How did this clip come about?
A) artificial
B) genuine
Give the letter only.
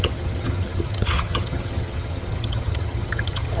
A